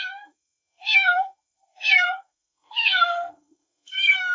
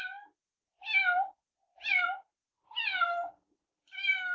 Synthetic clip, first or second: first